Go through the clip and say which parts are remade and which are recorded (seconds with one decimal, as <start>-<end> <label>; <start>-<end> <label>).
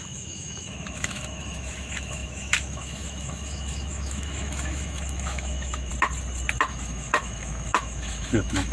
0.0-5.9 remade; 5.9-6.7 recorded; 6.7-8.7 remade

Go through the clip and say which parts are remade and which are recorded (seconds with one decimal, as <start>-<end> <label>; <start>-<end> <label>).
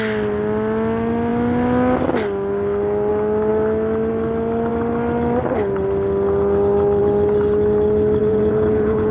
0.0-8.2 recorded; 8.2-9.1 remade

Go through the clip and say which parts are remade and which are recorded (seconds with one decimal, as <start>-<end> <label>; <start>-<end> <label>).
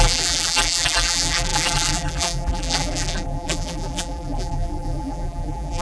0.0-5.8 remade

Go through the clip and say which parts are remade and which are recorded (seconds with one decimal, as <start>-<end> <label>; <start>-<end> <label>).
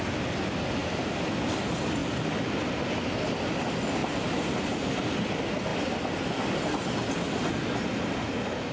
0.0-0.8 recorded; 0.8-1.3 remade; 1.3-4.0 recorded; 4.0-4.9 remade; 4.9-8.7 recorded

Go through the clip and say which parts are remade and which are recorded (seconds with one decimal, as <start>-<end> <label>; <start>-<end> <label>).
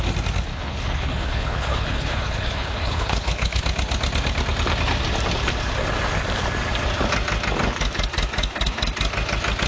0.0-0.5 recorded; 0.5-3.6 remade; 3.6-9.7 recorded